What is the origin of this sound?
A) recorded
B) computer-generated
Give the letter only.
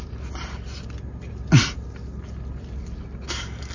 A